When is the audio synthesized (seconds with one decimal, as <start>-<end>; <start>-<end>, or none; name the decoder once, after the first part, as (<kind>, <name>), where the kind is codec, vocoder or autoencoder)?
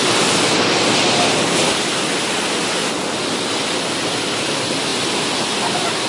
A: none